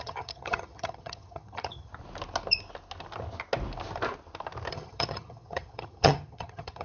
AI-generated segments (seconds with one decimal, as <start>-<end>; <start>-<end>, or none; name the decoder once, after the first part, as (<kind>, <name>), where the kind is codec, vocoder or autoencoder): 0.0-1.9 (vocoder, HiFi-GAN); 4.7-6.8